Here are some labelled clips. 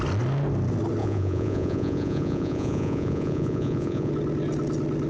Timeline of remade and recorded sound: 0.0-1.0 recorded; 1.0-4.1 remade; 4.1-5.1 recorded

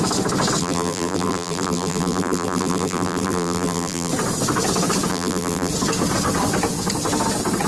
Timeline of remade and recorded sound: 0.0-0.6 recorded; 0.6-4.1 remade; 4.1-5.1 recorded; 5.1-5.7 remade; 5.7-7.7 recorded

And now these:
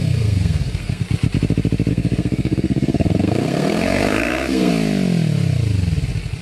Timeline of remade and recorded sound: 0.0-1.0 remade; 1.0-1.9 recorded; 1.9-4.7 remade; 4.7-6.4 recorded

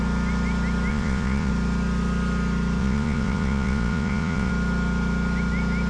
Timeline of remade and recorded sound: 0.0-0.9 recorded; 0.9-1.5 remade; 1.5-2.8 recorded; 2.8-4.5 remade; 4.5-5.9 recorded